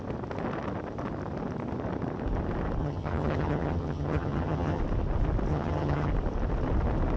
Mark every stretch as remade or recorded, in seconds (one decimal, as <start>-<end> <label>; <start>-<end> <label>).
0.0-2.8 recorded; 2.8-4.8 remade; 4.8-5.5 recorded; 5.5-6.1 remade; 6.1-7.2 recorded